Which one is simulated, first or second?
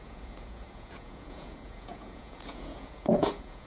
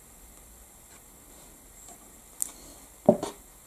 first